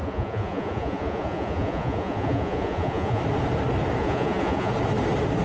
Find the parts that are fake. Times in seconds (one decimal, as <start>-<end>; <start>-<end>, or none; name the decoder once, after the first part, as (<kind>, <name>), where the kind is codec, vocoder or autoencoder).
0.0-3.2 (vocoder, Vocos); 4.0-4.7